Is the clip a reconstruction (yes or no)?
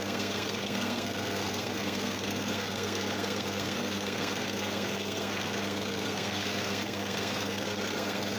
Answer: yes